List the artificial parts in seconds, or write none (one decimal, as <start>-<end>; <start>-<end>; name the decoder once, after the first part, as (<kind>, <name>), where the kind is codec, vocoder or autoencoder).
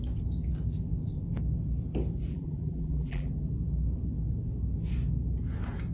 2.3-3.3 (vocoder, BigVGAN v2)